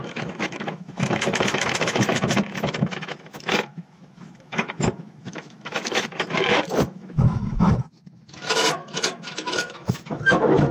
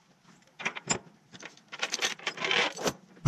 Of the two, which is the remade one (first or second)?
first